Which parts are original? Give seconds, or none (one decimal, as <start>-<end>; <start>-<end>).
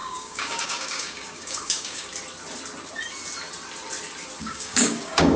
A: 2.1-4.4